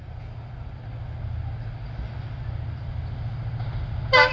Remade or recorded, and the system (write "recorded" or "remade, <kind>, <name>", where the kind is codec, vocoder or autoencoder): recorded